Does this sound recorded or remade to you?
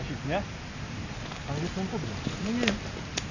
recorded